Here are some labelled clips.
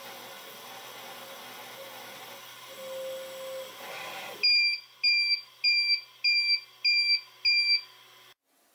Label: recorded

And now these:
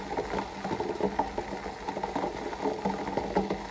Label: recorded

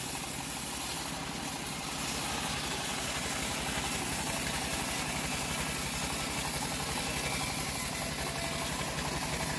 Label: recorded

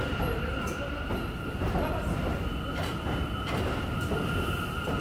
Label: recorded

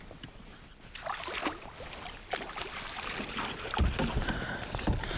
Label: recorded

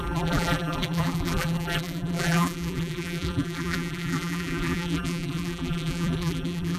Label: remade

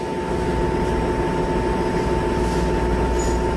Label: recorded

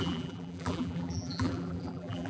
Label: remade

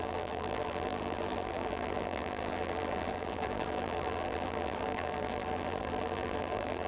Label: remade